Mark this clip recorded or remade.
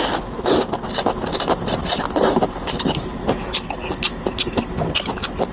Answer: recorded